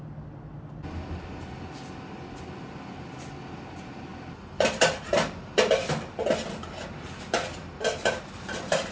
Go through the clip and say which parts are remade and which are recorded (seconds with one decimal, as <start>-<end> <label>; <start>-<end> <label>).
0.0-8.9 recorded